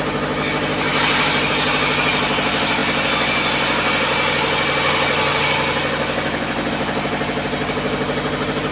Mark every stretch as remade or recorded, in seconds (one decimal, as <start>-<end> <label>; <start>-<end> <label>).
0.0-0.9 recorded; 0.9-1.5 remade; 1.5-8.7 recorded